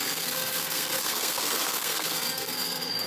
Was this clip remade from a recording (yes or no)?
yes